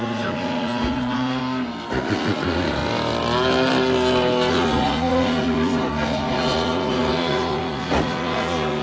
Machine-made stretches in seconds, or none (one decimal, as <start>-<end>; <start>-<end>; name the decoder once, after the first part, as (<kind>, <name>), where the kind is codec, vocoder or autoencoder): 0.0-1.4 (vocoder, Vocos); 1.9-2.8; 4.5-8.8

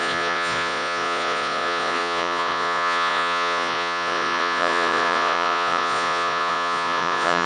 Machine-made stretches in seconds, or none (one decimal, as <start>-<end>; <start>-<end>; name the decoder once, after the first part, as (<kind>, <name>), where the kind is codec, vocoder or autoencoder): 0.0-7.5 (vocoder, Vocos)

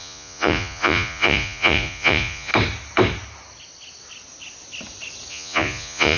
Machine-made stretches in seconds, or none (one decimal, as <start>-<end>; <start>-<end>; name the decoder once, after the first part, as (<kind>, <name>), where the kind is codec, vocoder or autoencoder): 0.0-2.5 (vocoder, Vocos); 5.3-6.2

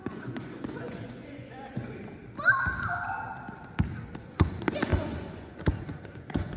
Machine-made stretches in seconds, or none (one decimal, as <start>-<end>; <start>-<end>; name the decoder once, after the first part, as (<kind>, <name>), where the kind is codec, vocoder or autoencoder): 0.0-2.2 (vocoder, Vocos); 4.2-6.6

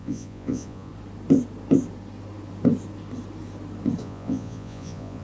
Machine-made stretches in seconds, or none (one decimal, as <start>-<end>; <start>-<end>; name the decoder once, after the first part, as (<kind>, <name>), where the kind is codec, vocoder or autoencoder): 0.0-0.9 (vocoder, Vocos); 4.0-5.2